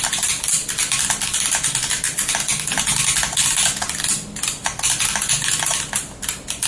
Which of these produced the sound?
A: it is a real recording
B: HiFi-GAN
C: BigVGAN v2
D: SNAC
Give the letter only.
A